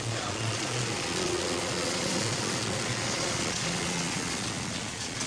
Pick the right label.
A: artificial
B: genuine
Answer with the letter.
A